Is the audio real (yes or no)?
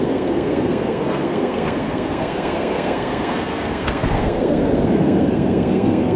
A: no